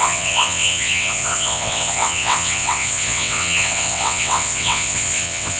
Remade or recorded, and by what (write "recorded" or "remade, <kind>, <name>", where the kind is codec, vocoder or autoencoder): remade, vocoder, WaveNeXt